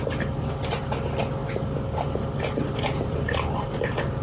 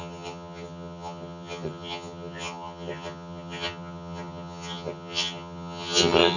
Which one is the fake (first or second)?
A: second